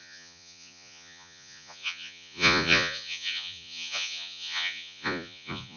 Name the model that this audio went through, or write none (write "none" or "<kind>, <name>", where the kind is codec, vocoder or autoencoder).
vocoder, Vocos